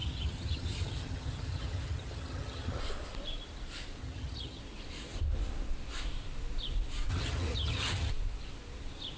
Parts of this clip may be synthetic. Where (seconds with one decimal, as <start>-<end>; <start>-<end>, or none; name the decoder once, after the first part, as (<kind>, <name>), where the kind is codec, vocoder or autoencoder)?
0.0-2.8 (vocoder, HiFi-GAN); 4.0-4.6; 7.1-8.1